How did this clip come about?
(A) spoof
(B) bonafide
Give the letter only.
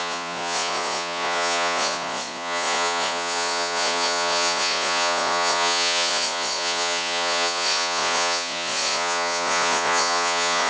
A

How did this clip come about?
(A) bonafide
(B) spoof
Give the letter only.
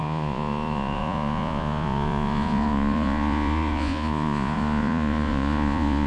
B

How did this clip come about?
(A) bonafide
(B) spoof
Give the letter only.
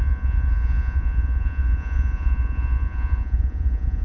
B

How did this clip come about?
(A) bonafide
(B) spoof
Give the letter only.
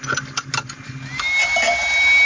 A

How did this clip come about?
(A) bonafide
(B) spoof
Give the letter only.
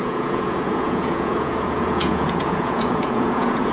B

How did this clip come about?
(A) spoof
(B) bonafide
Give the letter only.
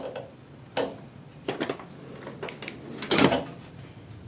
B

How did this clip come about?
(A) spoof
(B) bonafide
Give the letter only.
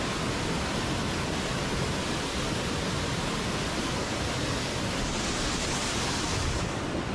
B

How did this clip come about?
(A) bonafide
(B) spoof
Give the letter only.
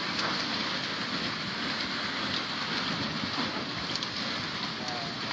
A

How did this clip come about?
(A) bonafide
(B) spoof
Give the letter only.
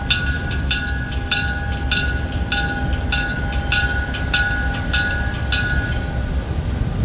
A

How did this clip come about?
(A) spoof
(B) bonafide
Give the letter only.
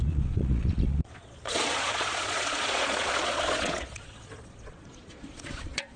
A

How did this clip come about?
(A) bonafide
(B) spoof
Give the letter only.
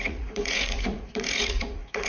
B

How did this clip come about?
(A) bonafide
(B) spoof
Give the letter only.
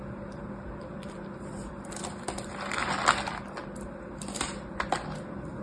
A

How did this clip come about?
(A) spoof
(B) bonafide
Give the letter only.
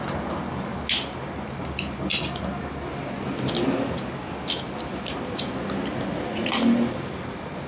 B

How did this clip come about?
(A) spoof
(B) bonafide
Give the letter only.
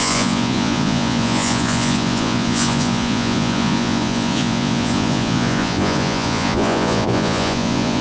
A